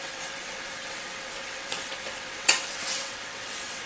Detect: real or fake fake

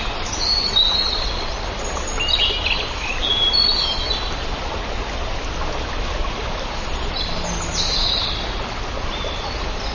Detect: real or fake real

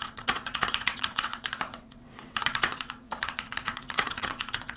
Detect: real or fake fake